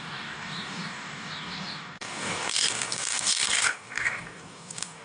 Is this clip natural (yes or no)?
no